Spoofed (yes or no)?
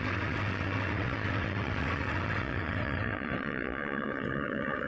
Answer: yes